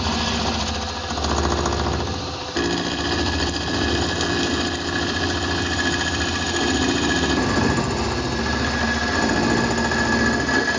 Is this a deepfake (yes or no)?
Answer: no